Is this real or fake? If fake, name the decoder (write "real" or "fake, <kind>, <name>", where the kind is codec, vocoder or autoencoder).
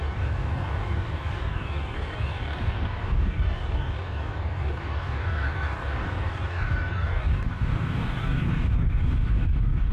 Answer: fake, codec, DAC